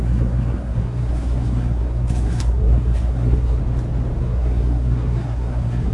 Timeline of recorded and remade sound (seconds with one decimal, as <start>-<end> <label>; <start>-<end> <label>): 0.0-3.6 remade; 3.6-4.2 recorded; 4.2-5.9 remade